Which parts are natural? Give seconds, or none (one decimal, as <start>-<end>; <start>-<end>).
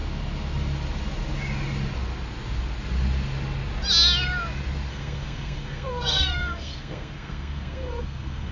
0.0-4.9